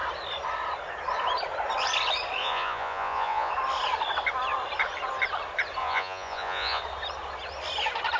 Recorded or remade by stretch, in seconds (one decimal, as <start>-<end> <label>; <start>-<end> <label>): 0.0-2.4 recorded; 2.4-3.5 remade; 3.5-5.8 recorded; 5.8-6.8 remade; 6.8-8.2 recorded